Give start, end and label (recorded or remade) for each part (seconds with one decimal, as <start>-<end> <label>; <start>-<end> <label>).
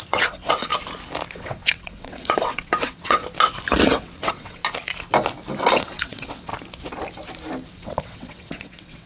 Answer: 0.0-0.7 remade; 0.7-1.3 recorded; 1.3-3.2 remade; 3.2-3.8 recorded; 3.8-4.6 remade; 4.6-5.6 recorded; 5.6-6.5 remade; 6.5-7.7 recorded; 7.7-9.1 remade